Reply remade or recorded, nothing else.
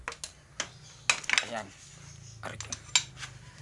recorded